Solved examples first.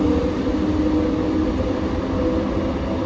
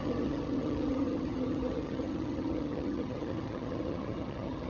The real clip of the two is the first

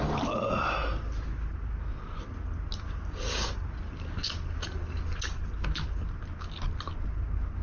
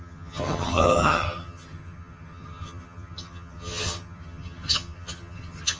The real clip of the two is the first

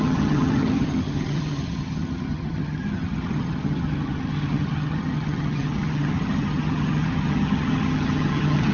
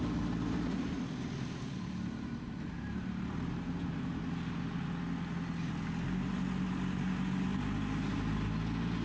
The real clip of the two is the second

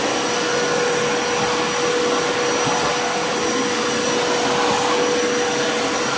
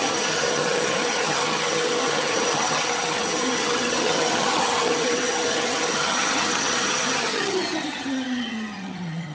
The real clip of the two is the first